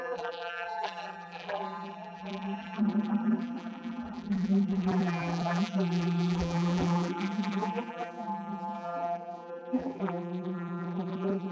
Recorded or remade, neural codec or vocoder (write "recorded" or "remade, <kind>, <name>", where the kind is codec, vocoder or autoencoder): remade, vocoder, BigVGAN v2